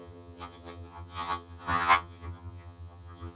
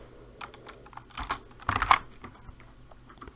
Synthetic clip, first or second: first